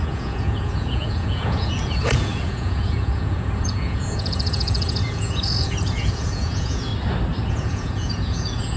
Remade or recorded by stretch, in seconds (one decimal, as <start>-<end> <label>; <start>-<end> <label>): 0.0-6.9 remade; 6.9-7.5 recorded; 7.5-8.8 remade